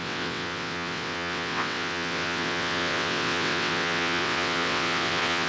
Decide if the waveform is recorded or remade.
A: remade